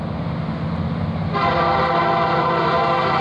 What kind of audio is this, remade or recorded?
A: recorded